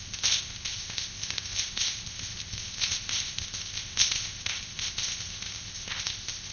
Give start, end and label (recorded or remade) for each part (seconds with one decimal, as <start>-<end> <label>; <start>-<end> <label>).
0.0-6.5 remade